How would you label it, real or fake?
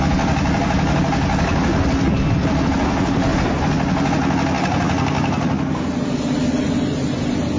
real